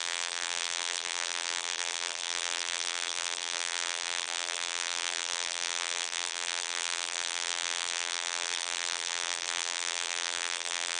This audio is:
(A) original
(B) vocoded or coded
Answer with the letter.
B